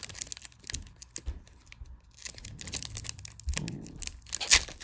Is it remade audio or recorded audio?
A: recorded